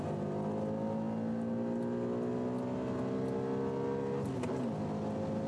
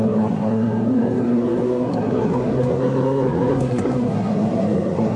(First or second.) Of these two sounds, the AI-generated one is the second